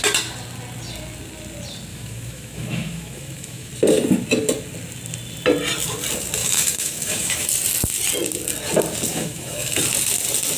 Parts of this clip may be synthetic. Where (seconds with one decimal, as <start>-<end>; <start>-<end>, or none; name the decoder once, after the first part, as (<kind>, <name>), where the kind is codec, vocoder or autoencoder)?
1.9-3.7 (autoencoder, DAC-VAE); 6.4-7.5; 9.1-9.8